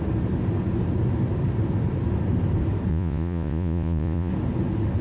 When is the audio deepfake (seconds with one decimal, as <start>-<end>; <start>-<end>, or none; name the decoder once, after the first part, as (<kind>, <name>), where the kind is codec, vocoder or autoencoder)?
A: 2.9-4.3 (vocoder, Vocos)

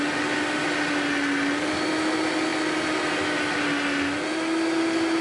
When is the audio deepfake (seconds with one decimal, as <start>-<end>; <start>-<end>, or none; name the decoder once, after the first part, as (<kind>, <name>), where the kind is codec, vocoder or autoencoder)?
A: none

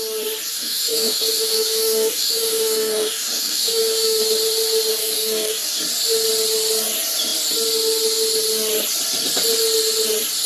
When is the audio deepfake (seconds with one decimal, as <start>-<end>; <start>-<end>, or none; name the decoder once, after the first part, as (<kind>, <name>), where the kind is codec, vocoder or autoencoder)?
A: 0.5-4.2 (codec, DAC); 5.0-5.8